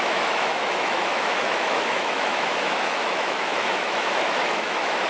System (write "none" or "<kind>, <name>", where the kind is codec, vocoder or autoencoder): autoencoder, DAC-VAE